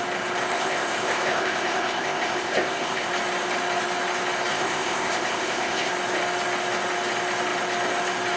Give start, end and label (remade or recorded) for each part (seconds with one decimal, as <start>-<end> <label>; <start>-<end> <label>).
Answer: 0.0-0.5 recorded; 0.5-3.1 remade; 3.1-4.5 recorded; 4.5-5.9 remade; 5.9-8.4 recorded